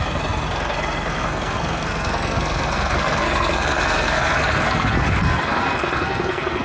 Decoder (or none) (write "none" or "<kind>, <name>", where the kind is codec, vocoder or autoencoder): codec, SNAC